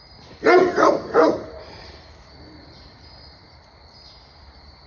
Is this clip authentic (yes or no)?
no